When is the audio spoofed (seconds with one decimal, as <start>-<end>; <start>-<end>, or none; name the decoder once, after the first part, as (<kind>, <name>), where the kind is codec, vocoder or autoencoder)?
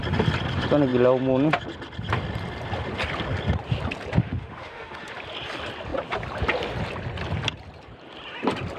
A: 4.2-5.1 (autoencoder, DAC-VAE)